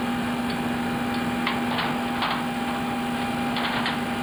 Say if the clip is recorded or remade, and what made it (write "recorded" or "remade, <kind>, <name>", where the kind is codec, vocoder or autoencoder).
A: recorded